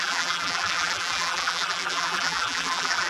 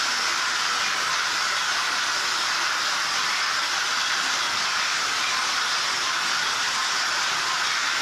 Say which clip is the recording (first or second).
second